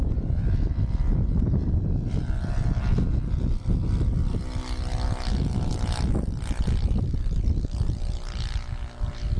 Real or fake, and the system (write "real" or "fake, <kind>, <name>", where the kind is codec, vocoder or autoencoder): real